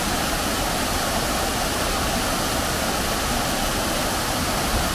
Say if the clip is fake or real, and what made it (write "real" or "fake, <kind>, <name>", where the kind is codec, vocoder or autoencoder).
real